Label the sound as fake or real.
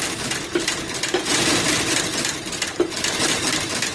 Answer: real